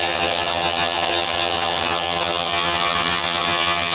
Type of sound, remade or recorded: remade